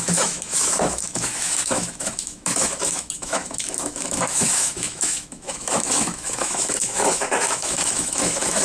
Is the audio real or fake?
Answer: fake